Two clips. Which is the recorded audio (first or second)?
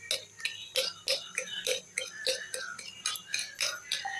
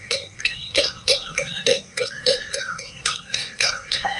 first